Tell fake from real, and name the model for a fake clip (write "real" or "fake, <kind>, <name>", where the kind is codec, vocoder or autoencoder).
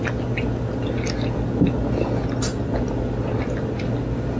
real